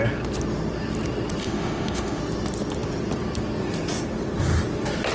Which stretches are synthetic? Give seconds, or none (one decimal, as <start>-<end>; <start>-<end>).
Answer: 1.4-2.2